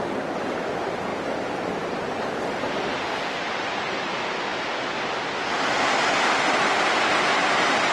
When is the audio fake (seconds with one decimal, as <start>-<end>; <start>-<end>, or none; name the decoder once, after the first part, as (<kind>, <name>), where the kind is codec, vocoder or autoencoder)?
1.1-2.4 (vocoder, BigVGAN v2)